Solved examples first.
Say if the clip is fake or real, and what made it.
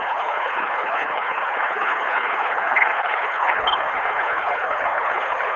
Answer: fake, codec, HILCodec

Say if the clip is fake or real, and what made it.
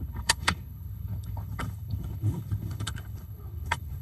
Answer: fake, codec, HILCodec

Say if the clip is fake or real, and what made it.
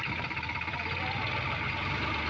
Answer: real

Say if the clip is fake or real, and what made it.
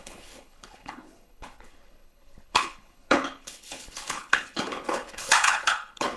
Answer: fake, codec, HILCodec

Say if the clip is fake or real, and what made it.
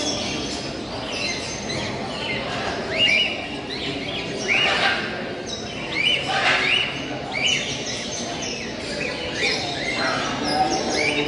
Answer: real